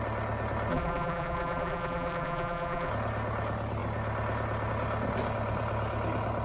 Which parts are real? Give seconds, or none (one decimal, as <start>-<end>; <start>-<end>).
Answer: 0.0-0.7; 2.9-6.4